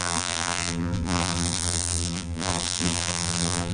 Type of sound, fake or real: fake